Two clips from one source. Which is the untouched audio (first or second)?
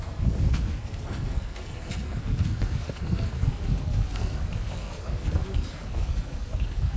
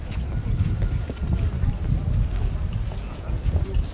second